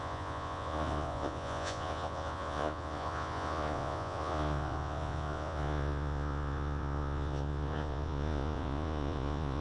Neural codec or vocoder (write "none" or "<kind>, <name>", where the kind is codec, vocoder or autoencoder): vocoder, Vocos